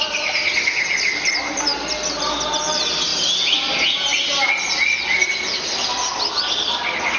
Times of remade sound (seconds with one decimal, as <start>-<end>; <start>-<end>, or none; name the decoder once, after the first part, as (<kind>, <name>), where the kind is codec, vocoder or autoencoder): none